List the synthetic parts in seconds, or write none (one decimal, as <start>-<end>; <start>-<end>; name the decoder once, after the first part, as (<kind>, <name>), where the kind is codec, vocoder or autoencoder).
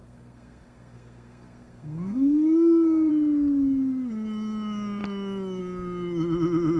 0.0-3.1 (codec, SNAC)